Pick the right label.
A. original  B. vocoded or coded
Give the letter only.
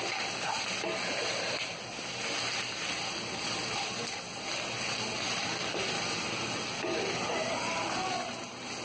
A